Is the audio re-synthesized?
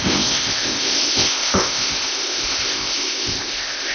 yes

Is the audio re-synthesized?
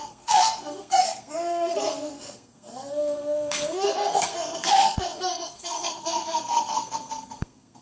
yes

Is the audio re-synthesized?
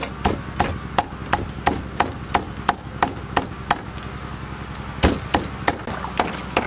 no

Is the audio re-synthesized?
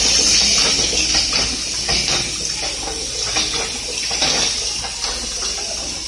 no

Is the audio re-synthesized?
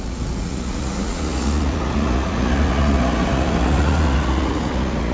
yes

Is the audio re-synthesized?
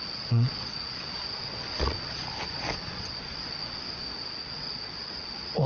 yes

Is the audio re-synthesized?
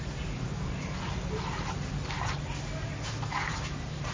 no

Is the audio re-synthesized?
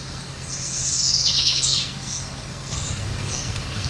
yes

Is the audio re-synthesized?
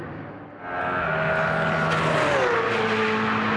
no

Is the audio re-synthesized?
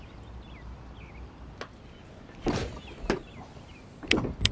no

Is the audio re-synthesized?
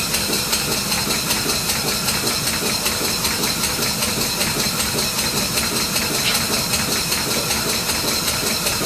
no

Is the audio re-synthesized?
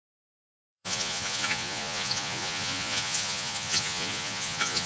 yes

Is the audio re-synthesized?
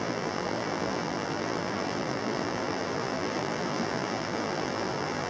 yes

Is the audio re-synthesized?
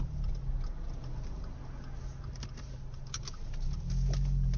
no